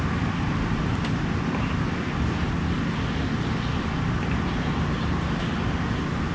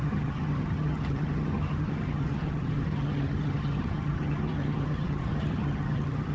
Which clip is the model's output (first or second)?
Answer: second